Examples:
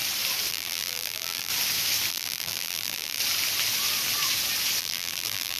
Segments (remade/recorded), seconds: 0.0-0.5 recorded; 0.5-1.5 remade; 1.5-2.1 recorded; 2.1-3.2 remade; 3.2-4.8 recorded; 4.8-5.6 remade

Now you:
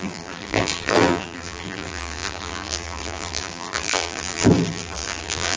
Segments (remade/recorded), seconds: 0.0-5.6 remade